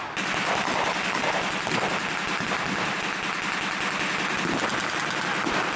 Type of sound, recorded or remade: recorded